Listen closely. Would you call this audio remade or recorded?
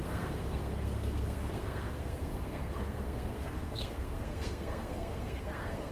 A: remade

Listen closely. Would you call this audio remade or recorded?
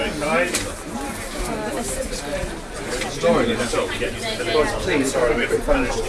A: recorded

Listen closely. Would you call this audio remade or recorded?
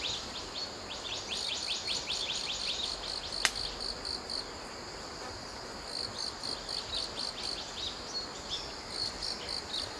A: recorded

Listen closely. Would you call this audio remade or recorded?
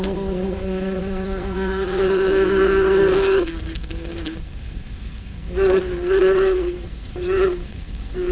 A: remade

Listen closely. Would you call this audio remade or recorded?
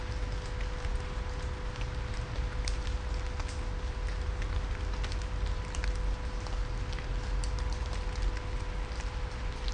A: recorded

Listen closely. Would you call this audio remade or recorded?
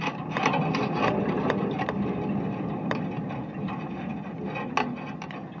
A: recorded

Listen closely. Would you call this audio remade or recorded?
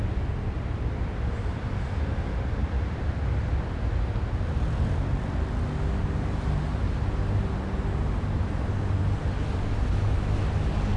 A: recorded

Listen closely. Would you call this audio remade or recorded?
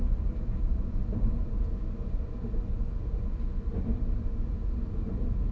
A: recorded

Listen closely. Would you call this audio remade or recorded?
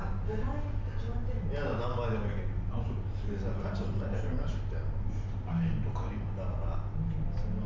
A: recorded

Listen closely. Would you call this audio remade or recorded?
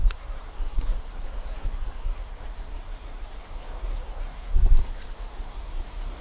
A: remade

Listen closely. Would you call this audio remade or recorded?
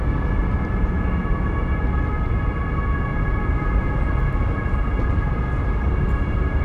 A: recorded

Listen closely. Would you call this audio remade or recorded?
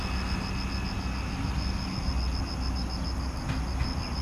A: recorded